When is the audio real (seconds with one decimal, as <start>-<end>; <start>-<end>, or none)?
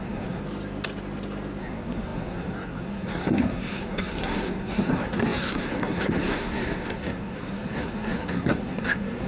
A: 0.4-1.6